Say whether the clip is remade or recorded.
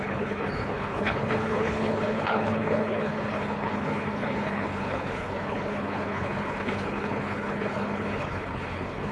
remade